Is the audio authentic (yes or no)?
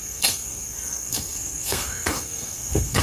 no